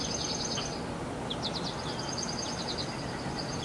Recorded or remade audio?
recorded